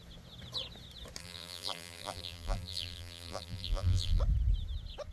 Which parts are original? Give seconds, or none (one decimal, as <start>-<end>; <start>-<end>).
0.0-1.2; 4.2-5.1